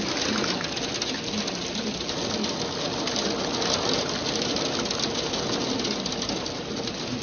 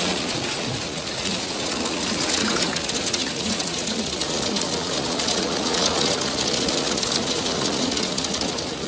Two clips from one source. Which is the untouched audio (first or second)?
first